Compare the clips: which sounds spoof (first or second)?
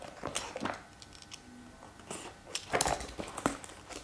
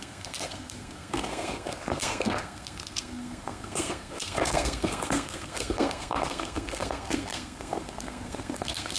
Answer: second